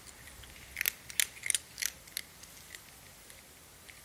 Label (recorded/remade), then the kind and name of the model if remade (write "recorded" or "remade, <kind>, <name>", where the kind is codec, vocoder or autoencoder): recorded